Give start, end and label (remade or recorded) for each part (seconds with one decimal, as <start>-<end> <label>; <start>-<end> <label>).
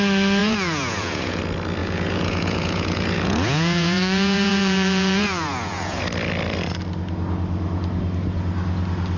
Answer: 0.0-0.4 recorded; 0.4-1.4 remade; 1.4-1.8 recorded; 1.8-6.0 remade; 6.0-9.2 recorded